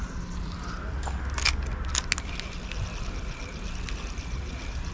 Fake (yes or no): no